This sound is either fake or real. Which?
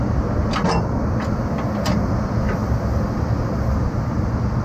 real